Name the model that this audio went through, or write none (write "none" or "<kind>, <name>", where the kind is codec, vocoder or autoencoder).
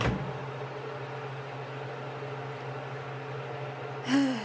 none